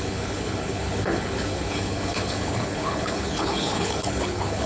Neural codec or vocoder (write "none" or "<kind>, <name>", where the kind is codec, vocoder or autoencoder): codec, HILCodec